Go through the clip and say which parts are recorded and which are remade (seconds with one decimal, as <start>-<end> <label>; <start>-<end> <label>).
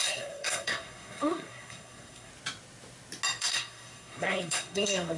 0.0-2.3 remade; 2.3-3.4 recorded; 3.4-5.2 remade